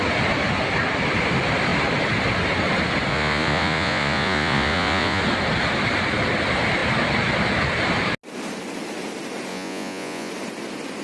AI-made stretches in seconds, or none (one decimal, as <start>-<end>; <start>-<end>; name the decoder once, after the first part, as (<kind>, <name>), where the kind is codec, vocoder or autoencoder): 3.1-5.2 (vocoder, Vocos); 9.5-10.3